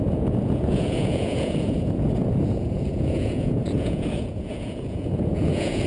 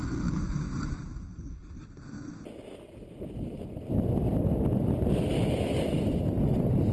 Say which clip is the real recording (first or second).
second